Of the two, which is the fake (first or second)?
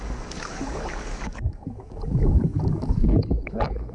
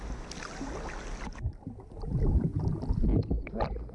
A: first